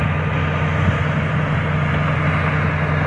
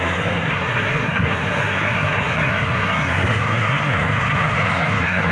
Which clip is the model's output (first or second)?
second